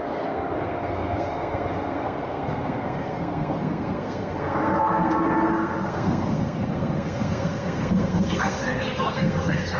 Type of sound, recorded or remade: remade